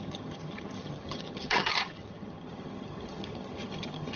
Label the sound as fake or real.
fake